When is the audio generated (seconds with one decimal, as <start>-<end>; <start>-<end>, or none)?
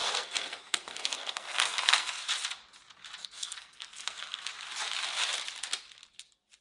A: 0.0-2.2; 3.2-4.5